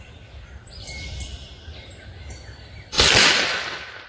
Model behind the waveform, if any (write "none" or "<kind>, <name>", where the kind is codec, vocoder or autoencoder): vocoder, BigVGAN v2